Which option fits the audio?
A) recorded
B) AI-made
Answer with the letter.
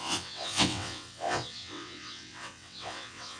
B